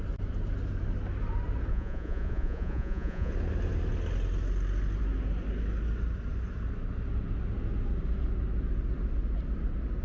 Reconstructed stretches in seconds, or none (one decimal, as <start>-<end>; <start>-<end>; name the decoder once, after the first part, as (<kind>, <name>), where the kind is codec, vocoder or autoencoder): 1.7-3.3 (vocoder, Vocos)